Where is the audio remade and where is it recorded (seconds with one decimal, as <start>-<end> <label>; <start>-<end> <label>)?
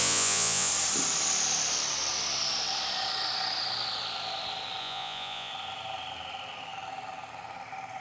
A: 0.0-0.7 remade; 0.7-4.8 recorded; 4.8-5.5 remade; 5.5-8.0 recorded